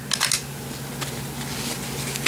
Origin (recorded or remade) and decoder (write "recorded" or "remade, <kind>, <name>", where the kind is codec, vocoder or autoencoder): recorded